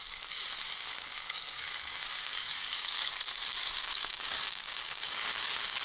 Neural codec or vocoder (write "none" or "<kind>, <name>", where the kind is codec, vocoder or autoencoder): codec, DAC